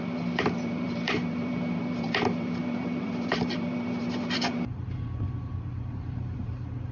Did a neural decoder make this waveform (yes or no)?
yes